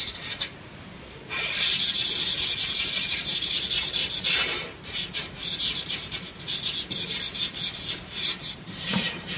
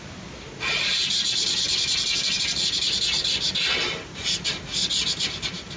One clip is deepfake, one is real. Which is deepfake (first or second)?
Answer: first